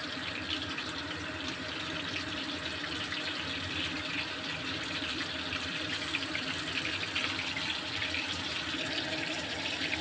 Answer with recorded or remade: remade